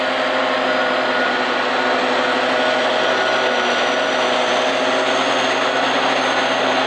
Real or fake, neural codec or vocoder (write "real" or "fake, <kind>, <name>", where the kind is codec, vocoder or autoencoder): real